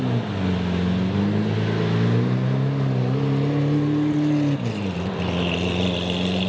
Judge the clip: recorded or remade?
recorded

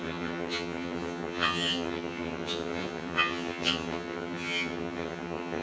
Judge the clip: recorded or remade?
remade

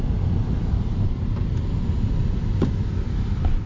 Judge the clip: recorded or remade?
recorded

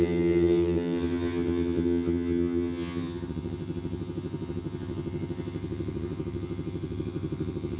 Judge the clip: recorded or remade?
remade